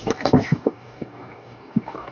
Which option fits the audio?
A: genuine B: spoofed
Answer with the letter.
B